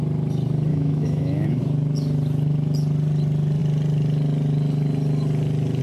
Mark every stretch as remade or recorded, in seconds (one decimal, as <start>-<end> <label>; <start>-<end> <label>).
0.0-0.7 recorded; 0.7-1.6 remade; 1.6-5.8 recorded